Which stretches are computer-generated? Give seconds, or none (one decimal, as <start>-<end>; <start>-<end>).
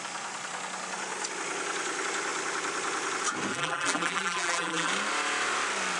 3.5-4.9